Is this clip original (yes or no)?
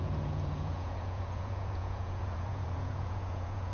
no